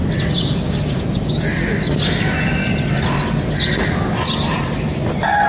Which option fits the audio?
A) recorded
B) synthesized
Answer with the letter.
A